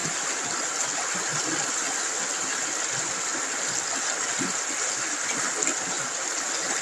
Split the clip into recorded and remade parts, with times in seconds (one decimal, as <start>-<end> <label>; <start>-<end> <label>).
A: 0.0-6.8 recorded